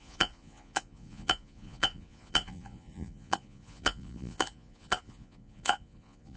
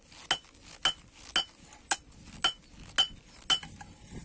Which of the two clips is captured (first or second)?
second